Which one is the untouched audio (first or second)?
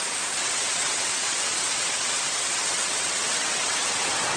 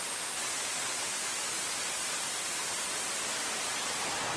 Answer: second